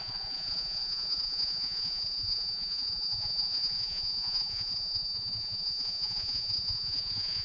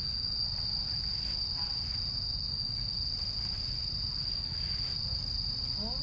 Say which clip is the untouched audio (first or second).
second